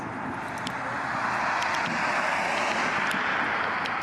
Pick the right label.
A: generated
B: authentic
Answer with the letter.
B